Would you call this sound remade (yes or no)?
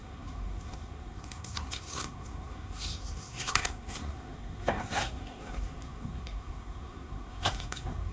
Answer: yes